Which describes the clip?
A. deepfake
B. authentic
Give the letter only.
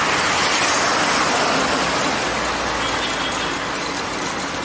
B